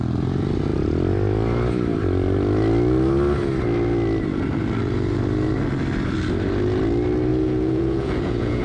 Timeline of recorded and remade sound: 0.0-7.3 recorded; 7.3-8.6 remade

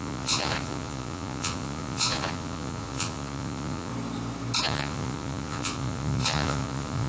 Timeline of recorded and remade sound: 0.0-3.9 remade; 3.9-4.6 recorded; 4.6-7.1 remade

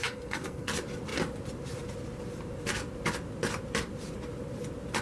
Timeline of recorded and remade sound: 0.0-0.7 remade; 0.7-5.0 recorded

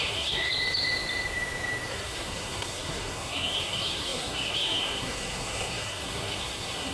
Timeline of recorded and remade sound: 0.0-0.5 remade; 0.5-1.9 recorded; 1.9-6.9 remade

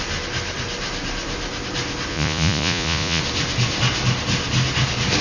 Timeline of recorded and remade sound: 0.0-2.1 recorded; 2.1-3.2 remade; 3.2-5.2 recorded

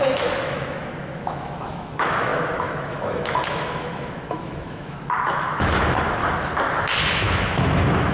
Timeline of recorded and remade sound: 0.0-6.2 remade; 6.2-7.1 recorded; 7.1-8.1 remade

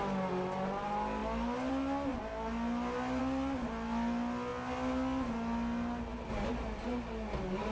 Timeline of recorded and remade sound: 0.0-7.7 recorded

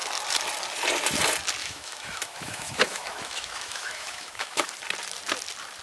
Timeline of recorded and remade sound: 0.0-1.6 recorded; 1.6-4.7 remade; 4.7-5.8 recorded